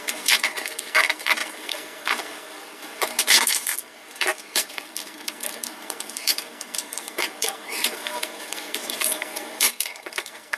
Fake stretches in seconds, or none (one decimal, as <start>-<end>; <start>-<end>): 0.0-10.6